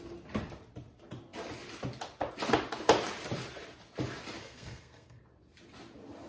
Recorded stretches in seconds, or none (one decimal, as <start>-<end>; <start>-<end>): 0.0-4.4; 5.2-6.3